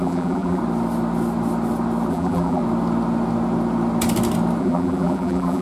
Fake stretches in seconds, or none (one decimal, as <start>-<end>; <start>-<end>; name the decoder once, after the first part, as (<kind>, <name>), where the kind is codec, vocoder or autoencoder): 0.0-0.6 (vocoder, BigVGAN v2); 2.1-2.6; 4.6-5.6

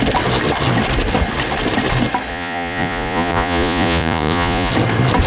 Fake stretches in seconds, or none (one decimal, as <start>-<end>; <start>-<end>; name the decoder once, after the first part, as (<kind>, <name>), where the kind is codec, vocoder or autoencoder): 2.3-4.7 (vocoder, Vocos)

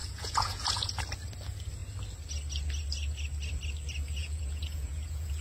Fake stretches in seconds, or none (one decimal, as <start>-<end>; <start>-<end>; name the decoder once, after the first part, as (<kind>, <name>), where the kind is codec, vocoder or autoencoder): 0.0-1.0 (vocoder, Vocos); 4.2-5.4

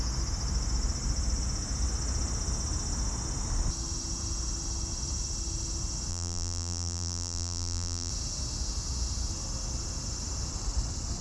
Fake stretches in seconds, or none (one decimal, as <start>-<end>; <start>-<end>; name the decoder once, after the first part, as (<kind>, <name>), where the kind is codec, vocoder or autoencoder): 6.1-8.1 (vocoder, BigVGAN v2)

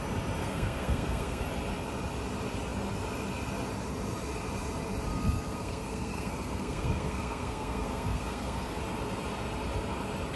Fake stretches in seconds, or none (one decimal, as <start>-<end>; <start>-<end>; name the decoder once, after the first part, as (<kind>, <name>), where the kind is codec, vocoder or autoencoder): 0.4-1.4 (codec, SNAC); 5.1-8.8

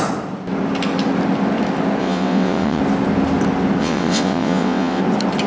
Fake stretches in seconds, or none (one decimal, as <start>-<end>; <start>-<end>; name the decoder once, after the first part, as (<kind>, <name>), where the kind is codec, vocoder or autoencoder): 2.0-2.8 (vocoder, WaveNeXt); 3.8-5.0

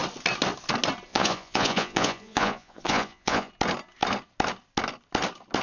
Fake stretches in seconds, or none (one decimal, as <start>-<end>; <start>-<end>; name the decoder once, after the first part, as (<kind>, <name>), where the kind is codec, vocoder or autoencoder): 1.1-3.5 (vocoder, Vocos)